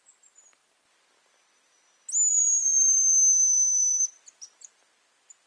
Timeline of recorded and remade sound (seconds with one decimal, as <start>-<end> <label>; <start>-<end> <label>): 0.0-0.6 remade; 0.6-2.3 recorded; 2.3-5.5 remade